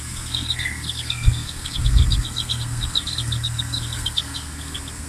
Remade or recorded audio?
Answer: remade